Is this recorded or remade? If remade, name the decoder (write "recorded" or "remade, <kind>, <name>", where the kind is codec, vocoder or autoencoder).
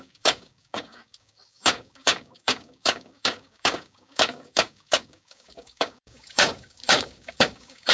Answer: remade, codec, DAC